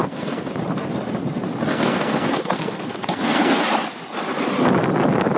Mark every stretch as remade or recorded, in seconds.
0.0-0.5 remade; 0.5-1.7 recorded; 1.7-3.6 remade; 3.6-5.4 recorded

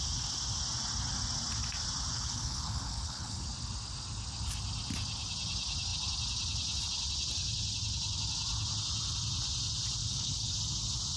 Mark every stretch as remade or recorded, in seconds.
0.0-2.1 recorded; 2.1-3.5 remade; 3.5-10.0 recorded; 10.0-10.5 remade; 10.5-11.2 recorded